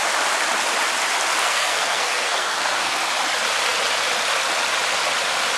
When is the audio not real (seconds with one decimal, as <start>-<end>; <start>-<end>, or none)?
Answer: 1.4-3.0